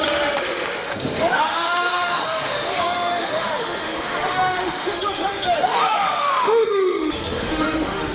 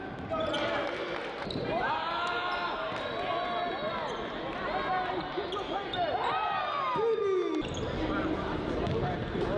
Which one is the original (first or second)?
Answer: second